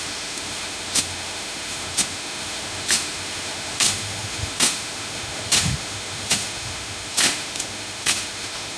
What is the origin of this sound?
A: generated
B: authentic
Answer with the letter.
A